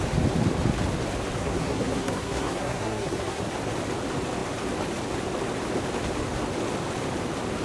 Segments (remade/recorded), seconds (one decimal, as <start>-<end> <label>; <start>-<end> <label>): 0.0-1.4 recorded; 1.4-3.4 remade; 3.4-7.6 recorded